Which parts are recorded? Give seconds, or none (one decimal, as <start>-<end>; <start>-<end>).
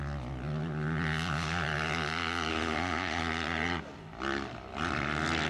0.0-2.5; 3.2-5.5